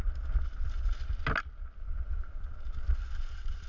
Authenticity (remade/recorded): recorded